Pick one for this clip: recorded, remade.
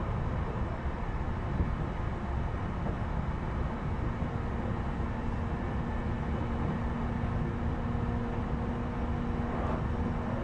recorded